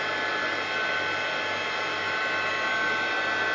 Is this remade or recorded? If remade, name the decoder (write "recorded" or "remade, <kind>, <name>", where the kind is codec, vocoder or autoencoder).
recorded